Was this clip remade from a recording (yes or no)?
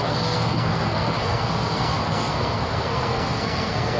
yes